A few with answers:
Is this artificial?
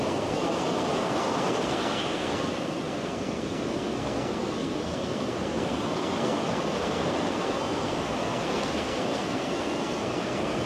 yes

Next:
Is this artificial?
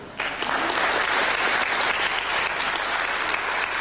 no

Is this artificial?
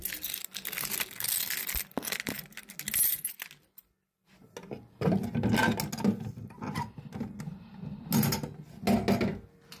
no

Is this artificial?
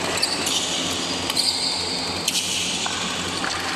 no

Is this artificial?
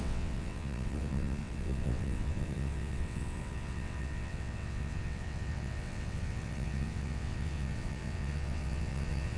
yes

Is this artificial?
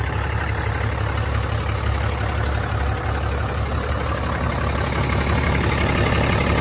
no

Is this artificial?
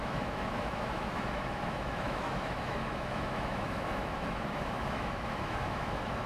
yes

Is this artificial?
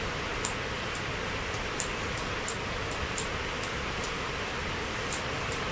no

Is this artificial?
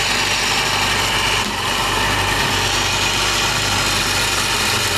no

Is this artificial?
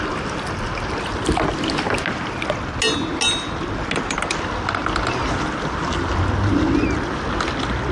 no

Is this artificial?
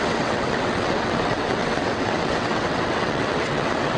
yes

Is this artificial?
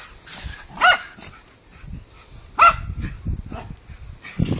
no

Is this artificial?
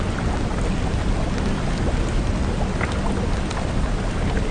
no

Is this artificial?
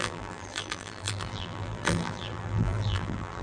yes